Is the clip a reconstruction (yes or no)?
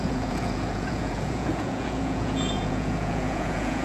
yes